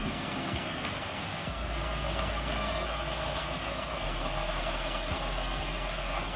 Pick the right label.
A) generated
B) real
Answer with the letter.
A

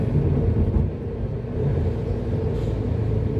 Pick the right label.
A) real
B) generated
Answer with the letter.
A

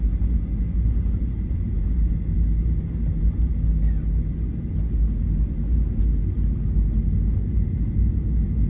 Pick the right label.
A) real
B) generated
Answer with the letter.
A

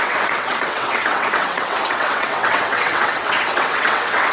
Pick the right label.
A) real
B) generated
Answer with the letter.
B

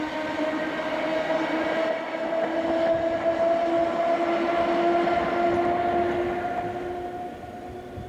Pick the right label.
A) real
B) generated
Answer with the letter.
A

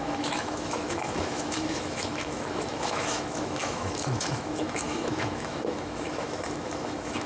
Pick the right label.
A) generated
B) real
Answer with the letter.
A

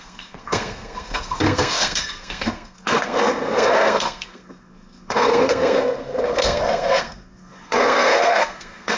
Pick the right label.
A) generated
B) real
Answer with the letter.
A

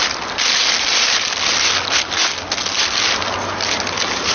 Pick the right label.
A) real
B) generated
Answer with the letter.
A